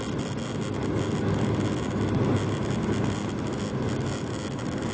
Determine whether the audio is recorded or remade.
recorded